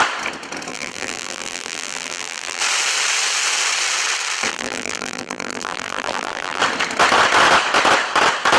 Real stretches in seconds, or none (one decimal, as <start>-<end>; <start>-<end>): 0.0-0.7; 2.6-4.5; 6.6-8.6